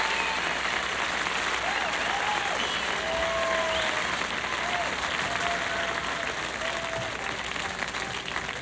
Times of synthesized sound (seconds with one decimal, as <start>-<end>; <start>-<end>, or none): none